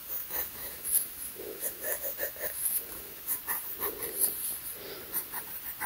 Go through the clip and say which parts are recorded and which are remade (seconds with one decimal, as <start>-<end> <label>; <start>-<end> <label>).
0.0-3.4 remade; 3.4-5.9 recorded